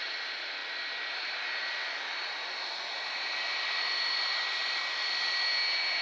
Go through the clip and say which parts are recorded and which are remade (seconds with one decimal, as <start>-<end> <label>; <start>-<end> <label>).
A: 0.0-6.0 recorded